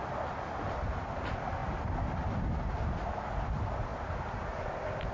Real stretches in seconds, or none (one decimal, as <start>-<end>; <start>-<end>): 0.0-5.1